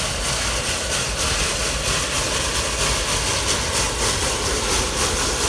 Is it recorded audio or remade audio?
recorded